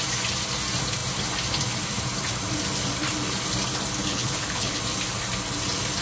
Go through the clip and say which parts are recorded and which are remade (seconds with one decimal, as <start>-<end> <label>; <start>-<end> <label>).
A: 0.0-4.1 recorded; 4.1-4.8 remade; 4.8-6.0 recorded